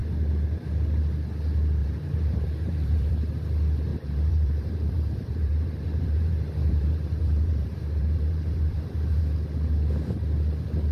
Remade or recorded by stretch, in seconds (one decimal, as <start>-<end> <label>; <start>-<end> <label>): 0.0-1.8 recorded; 1.8-3.1 remade; 3.1-3.9 recorded; 3.9-9.2 remade; 9.2-10.9 recorded